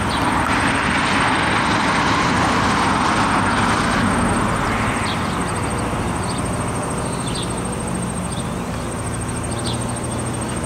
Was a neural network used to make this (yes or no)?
no